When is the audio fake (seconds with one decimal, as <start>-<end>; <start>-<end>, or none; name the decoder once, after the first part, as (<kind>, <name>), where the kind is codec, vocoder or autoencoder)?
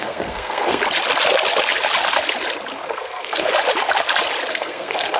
0.0-0.8 (codec, SNAC); 2.7-3.5; 4.5-5.2